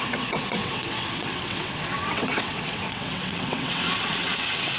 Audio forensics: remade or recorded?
remade